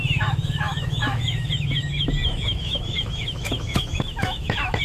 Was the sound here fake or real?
fake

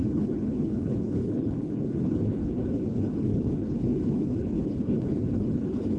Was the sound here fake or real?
fake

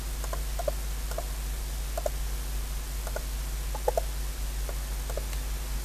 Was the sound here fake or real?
real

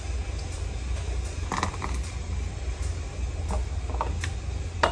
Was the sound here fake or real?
real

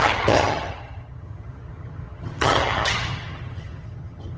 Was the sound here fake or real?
fake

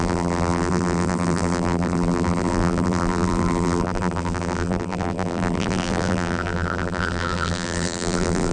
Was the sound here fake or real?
fake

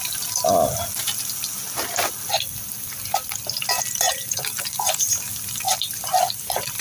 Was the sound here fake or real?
real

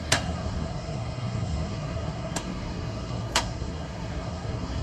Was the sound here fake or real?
fake